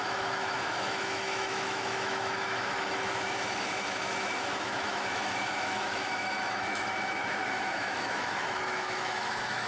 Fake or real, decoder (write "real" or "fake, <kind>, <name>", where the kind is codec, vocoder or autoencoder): fake, autoencoder, DAC-VAE